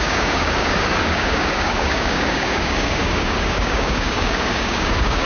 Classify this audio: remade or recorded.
remade